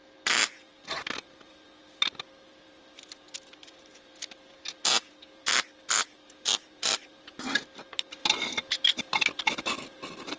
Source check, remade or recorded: recorded